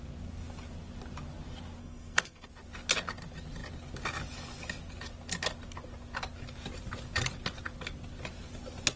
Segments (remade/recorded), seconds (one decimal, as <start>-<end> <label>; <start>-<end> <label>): 0.0-1.8 recorded; 1.8-2.5 remade; 2.5-9.0 recorded